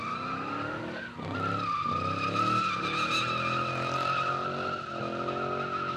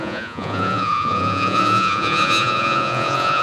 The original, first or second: first